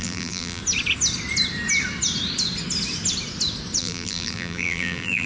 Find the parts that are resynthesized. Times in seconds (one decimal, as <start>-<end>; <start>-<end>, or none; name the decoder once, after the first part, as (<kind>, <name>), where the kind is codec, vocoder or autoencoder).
0.0-0.6 (vocoder, BigVGAN v2); 3.8-5.3